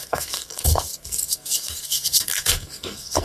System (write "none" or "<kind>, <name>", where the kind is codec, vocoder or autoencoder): codec, SNAC